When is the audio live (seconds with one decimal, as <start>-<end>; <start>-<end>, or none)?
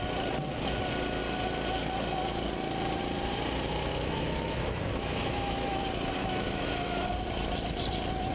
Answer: 0.0-3.9; 5.8-6.2; 7.1-8.3